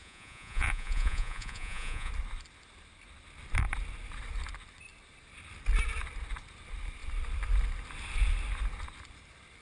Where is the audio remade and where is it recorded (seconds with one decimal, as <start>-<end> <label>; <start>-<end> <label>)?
0.0-2.1 remade; 2.1-9.6 recorded